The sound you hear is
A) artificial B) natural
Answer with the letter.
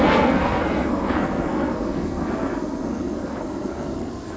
A